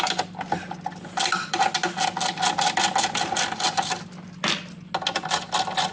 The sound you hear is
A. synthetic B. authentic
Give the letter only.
B